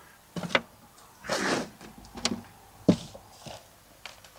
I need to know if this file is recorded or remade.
recorded